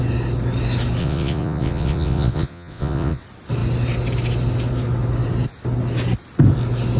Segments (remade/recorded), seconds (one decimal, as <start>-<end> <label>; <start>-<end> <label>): 0.0-1.0 recorded; 1.0-3.2 remade; 3.2-7.0 recorded